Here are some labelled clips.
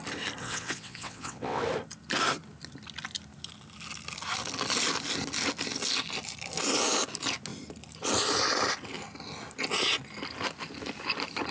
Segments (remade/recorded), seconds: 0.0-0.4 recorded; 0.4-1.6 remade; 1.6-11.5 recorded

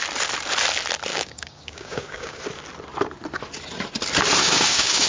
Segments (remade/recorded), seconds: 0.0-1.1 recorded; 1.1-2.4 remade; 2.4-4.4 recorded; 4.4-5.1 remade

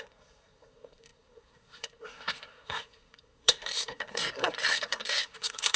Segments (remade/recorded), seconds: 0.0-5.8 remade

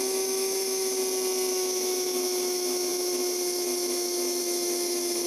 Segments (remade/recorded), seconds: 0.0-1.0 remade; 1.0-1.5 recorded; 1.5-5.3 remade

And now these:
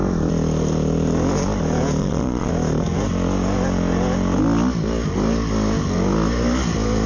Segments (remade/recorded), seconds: 0.0-2.0 recorded; 2.0-2.5 remade; 2.5-7.1 recorded

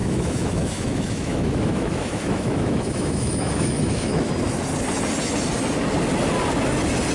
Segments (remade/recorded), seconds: 0.0-4.3 remade; 4.3-7.1 recorded

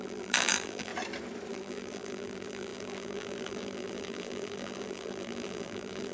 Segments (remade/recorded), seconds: 0.0-0.9 remade; 0.9-1.5 recorded; 1.5-6.1 remade

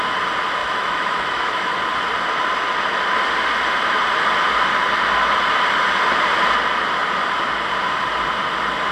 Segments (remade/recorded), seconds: 0.0-0.6 recorded; 0.6-1.8 remade; 1.8-8.9 recorded